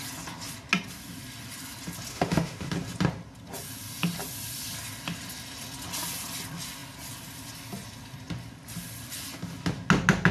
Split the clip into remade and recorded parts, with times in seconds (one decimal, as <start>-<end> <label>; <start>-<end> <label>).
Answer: 0.0-2.1 recorded; 2.1-2.7 remade; 2.7-10.3 recorded